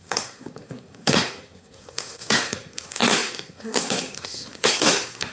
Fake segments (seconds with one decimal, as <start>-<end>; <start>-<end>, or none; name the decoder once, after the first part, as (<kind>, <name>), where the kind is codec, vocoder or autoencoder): 0.0-5.3 (codec, SNAC)

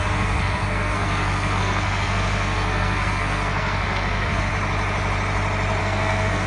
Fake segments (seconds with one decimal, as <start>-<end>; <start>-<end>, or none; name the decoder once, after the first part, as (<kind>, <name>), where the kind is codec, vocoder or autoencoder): 0.0-4.5 (codec, SNAC); 5.8-6.5

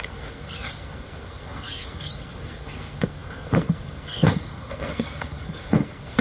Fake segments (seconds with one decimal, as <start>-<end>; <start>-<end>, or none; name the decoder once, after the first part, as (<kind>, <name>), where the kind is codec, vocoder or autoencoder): 0.0-6.2 (codec, SNAC)

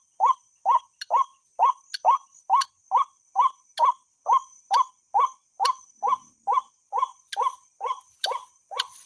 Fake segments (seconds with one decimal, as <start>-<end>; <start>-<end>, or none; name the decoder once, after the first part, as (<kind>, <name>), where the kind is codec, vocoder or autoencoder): none

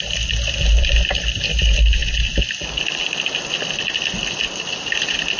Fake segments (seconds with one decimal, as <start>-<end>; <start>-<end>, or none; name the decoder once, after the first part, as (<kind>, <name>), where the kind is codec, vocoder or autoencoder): none

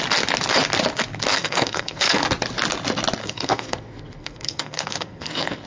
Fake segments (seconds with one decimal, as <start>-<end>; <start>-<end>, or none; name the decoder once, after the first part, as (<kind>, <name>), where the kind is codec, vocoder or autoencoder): 1.3-2.2 (codec, SNAC); 3.2-5.7